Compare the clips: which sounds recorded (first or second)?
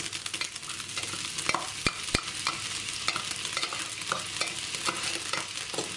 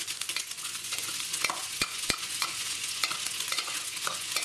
first